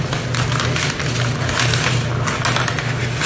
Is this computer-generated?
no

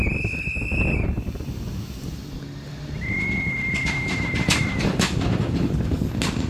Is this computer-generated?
no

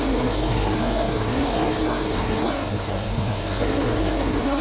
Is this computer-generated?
yes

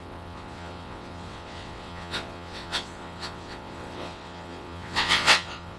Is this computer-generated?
yes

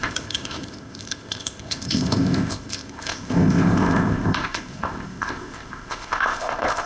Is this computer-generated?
yes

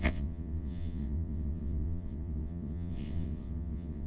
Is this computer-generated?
yes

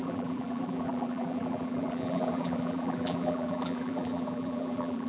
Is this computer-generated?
yes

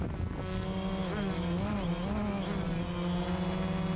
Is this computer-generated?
no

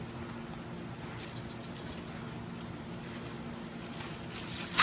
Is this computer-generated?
no